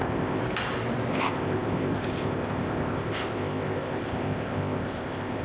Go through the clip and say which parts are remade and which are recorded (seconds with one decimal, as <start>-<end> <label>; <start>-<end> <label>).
0.0-0.4 remade; 0.4-1.1 recorded; 1.1-5.4 remade